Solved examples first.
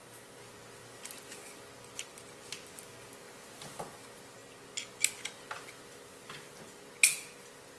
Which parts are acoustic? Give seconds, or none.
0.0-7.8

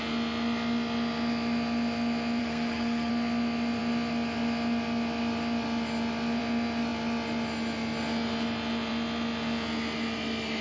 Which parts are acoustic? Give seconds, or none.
0.0-2.4; 3.1-10.6

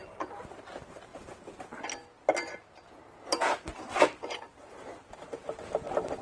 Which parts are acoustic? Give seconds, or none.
0.0-6.2